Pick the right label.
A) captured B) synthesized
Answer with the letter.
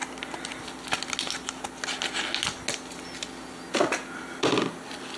A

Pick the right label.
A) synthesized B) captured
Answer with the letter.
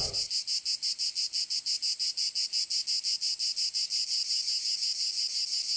B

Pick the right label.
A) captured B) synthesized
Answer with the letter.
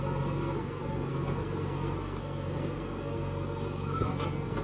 B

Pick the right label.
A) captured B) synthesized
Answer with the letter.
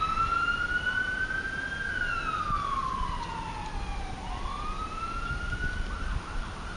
A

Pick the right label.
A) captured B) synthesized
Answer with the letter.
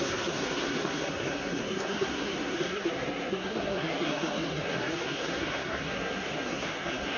B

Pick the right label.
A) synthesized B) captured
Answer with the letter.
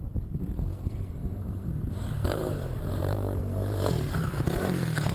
A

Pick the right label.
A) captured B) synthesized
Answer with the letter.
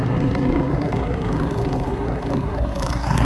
B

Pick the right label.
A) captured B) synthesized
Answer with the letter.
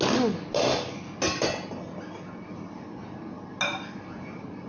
A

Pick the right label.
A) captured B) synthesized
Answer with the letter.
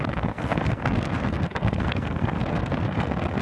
B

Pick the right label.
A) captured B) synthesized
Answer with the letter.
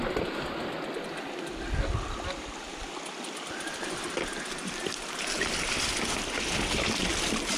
A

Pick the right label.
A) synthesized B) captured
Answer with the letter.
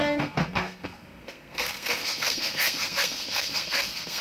A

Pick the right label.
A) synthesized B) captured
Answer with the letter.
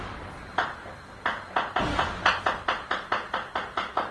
B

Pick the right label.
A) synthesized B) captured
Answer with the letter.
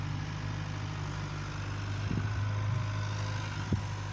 B